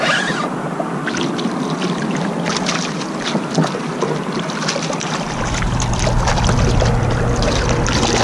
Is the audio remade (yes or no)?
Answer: no